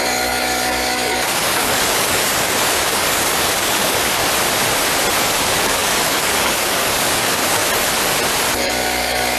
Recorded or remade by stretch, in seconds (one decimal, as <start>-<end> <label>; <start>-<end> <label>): 0.0-4.2 remade; 4.2-5.2 recorded; 5.2-7.6 remade; 7.6-8.6 recorded; 8.6-9.4 remade